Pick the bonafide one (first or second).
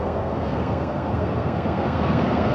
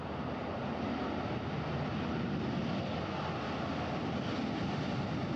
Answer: second